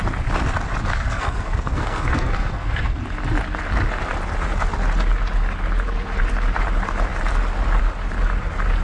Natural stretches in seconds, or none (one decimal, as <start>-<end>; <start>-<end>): 0.0-0.9; 3.0-8.8